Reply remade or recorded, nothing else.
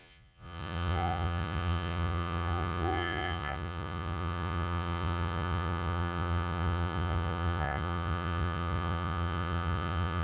remade